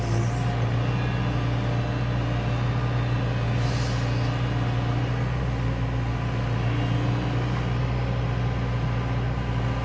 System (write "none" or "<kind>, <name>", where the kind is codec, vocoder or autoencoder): none